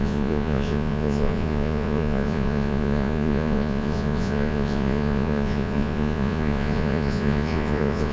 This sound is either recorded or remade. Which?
remade